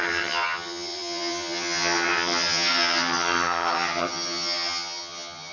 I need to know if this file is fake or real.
fake